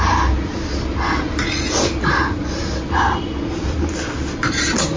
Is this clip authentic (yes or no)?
yes